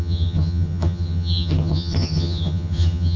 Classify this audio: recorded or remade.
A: remade